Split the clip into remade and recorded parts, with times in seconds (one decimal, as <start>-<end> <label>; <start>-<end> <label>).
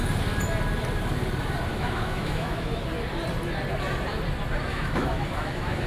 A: 0.0-1.7 recorded; 1.7-2.8 remade; 2.8-4.7 recorded; 4.7-5.9 remade